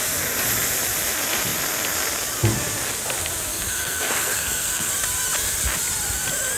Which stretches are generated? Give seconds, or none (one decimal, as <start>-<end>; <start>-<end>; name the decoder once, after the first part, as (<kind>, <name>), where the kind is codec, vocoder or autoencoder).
3.5-4.9 (codec, SNAC)